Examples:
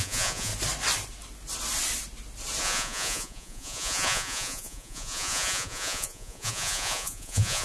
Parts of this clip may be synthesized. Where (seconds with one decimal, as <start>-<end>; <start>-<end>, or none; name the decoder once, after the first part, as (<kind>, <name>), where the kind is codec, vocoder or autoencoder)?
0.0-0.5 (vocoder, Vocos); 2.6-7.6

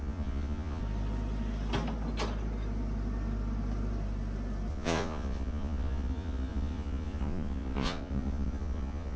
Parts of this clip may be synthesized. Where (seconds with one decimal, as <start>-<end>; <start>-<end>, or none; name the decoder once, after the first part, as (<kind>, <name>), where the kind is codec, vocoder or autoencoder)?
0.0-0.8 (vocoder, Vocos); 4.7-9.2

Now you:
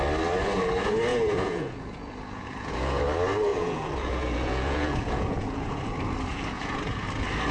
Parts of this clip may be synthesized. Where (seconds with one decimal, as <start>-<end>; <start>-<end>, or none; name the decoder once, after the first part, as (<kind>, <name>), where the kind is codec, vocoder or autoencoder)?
1.1-3.0 (vocoder, Vocos); 3.5-5.8; 6.3-7.1

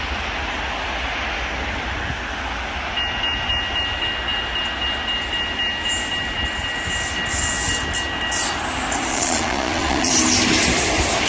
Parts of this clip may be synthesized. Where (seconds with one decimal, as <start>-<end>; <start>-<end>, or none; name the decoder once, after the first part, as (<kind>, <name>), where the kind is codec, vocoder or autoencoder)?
9.1-10.1 (vocoder, Vocos)

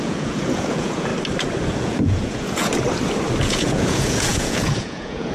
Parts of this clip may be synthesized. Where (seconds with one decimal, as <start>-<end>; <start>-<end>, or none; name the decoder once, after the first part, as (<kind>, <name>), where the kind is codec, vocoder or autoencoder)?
0.0-1.1 (vocoder, Vocos); 1.8-2.7; 3.4-5.3